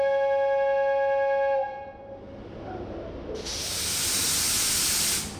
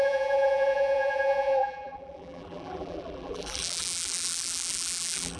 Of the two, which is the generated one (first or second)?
second